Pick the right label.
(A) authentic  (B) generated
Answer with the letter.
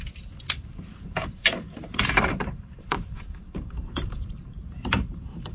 B